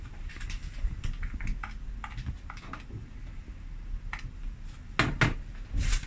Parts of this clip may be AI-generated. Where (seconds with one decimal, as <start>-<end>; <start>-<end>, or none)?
none